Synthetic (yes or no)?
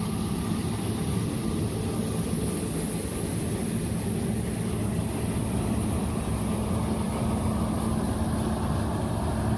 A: no